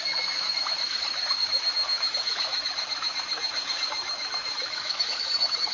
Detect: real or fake fake